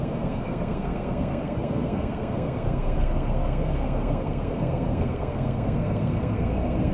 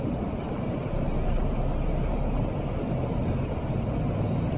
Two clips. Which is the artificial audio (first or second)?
first